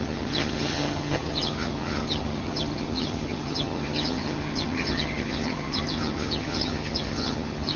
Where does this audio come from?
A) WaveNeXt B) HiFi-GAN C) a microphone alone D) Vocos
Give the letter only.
B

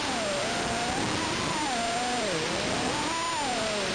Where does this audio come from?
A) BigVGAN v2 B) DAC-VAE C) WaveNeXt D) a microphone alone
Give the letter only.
D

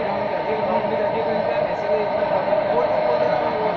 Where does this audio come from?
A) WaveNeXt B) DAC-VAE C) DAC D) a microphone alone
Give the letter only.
D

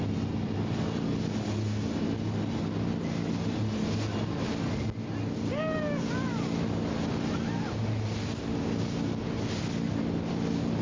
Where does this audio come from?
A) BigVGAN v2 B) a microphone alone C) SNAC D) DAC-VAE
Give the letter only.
B